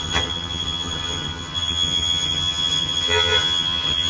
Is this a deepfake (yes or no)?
yes